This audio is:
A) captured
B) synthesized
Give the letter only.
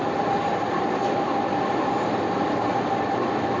B